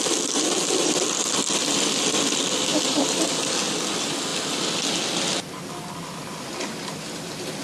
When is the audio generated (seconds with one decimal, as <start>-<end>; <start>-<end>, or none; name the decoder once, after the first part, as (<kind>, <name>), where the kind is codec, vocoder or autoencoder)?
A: 2.7-3.3 (vocoder, BigVGAN v2)